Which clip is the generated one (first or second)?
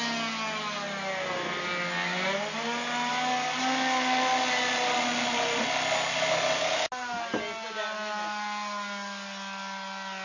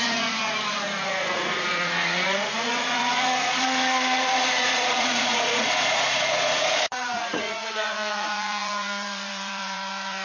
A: second